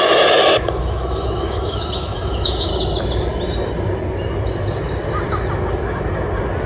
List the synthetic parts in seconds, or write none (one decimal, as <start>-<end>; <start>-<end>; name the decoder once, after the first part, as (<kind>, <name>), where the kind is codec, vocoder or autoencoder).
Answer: 0.0-2.7 (autoencoder, DAC-VAE)